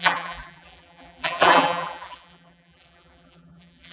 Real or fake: fake